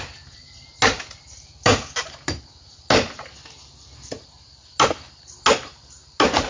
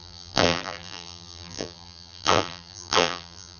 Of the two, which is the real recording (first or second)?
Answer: first